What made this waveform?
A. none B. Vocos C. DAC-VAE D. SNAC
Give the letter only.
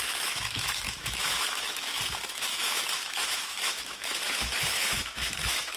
C